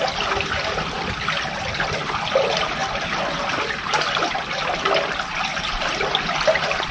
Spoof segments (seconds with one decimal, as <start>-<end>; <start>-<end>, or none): none